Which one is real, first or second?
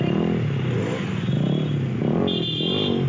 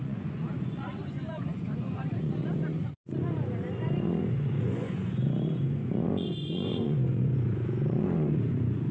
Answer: first